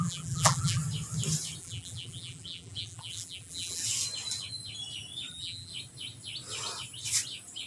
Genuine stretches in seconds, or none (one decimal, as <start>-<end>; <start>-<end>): 0.8-1.6; 3.8-5.3; 5.7-7.7